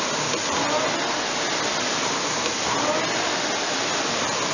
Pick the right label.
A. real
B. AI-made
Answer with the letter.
A